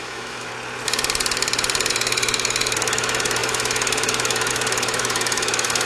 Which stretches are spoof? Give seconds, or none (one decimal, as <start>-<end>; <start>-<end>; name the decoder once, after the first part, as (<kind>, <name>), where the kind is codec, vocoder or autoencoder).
0.0-0.5 (autoencoder, DAC-VAE); 1.9-5.9